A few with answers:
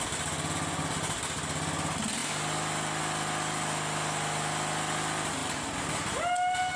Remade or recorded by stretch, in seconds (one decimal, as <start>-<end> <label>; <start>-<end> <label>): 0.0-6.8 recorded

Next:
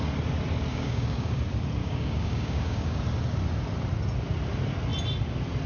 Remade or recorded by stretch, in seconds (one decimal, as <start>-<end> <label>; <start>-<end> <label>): 0.0-0.7 recorded; 0.7-1.4 remade; 1.4-1.8 recorded; 1.8-3.0 remade; 3.0-5.7 recorded

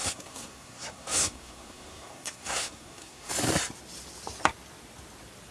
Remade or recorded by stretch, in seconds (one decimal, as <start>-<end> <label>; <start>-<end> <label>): 0.0-3.3 remade; 3.3-5.5 recorded

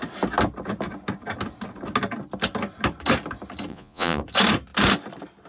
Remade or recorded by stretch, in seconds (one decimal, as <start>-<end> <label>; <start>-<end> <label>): 0.0-3.7 recorded; 3.7-4.2 remade; 4.2-5.5 recorded

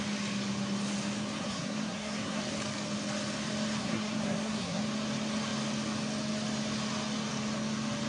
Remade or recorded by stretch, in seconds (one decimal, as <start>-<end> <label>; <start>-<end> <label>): 0.0-1.4 recorded; 1.4-2.4 remade; 2.4-3.8 recorded; 3.8-4.8 remade; 4.8-8.1 recorded

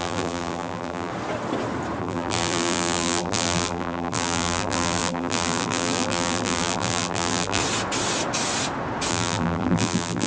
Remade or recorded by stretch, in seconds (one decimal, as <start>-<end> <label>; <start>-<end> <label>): 0.0-1.1 remade; 1.1-2.0 recorded; 2.0-7.6 remade; 7.6-9.1 recorded; 9.1-10.3 remade